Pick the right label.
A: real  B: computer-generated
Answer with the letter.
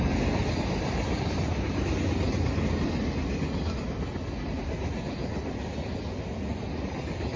A